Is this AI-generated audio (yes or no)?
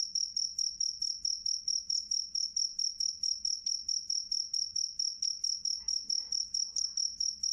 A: yes